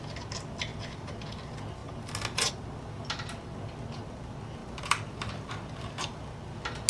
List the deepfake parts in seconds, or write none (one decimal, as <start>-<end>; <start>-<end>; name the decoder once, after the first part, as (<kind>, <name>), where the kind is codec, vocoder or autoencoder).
4.6-6.3 (vocoder, BigVGAN v2)